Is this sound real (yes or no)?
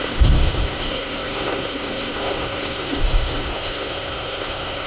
no